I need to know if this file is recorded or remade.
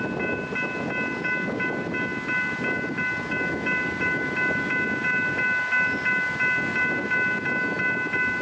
recorded